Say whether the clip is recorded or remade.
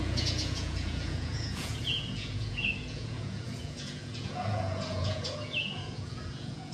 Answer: remade